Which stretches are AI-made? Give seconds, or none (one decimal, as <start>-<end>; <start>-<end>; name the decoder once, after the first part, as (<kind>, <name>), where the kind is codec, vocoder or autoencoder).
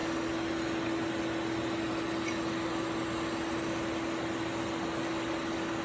none